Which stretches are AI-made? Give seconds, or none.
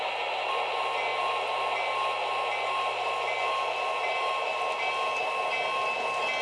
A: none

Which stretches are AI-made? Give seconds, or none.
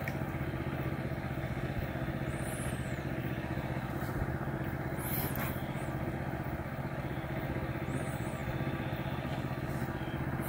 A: none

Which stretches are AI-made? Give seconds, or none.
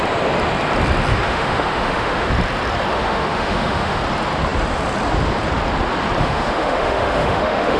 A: 1.1-2.3 (autoencoder, DAC-VAE); 2.9-4.0; 6.2-7.8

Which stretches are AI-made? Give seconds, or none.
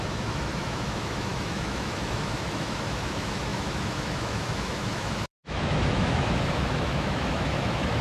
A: 0.0-8.0 (autoencoder, DAC-VAE)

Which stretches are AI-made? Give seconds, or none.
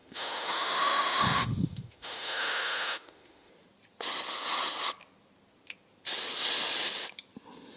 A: 0.0-3.5 (autoencoder, DAC-VAE)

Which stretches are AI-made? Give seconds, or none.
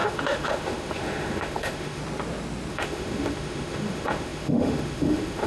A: 0.0-2.0 (autoencoder, DAC-VAE); 2.7-5.5